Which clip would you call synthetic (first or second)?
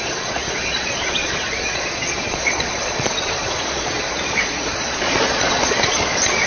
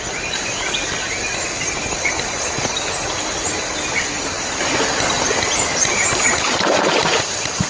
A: first